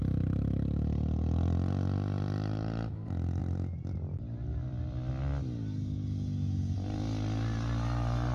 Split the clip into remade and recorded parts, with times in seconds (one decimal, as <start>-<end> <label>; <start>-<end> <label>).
0.0-3.4 recorded; 3.4-5.1 remade; 5.1-8.3 recorded

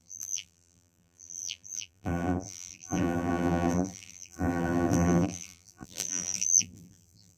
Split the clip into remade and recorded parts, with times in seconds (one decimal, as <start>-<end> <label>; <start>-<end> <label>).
0.0-7.4 remade

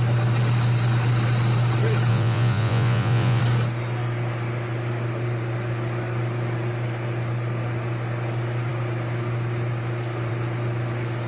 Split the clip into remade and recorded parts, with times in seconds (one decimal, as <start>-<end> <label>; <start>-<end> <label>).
0.0-2.1 recorded; 2.1-3.4 remade; 3.4-11.3 recorded

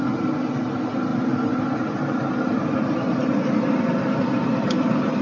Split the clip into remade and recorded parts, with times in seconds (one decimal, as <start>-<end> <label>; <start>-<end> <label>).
0.0-5.2 recorded

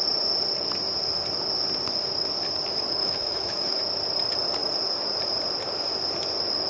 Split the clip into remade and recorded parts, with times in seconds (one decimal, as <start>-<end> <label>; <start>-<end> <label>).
0.0-3.0 recorded; 3.0-3.8 remade; 3.8-6.7 recorded

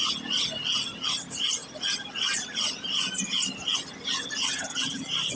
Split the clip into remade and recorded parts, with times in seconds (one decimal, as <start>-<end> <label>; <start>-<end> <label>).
0.0-5.4 recorded

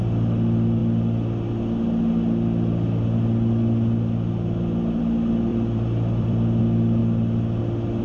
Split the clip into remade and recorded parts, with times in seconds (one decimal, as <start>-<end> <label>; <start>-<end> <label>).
0.0-5.5 recorded; 5.5-6.6 remade; 6.6-8.0 recorded